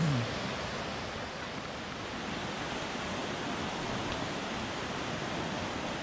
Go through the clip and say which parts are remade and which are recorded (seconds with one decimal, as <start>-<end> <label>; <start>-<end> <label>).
0.0-6.0 recorded